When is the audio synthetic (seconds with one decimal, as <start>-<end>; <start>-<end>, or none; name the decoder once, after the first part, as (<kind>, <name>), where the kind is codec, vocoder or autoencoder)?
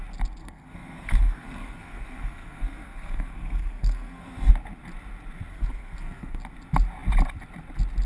0.4-4.5 (codec, SNAC); 5.5-6.4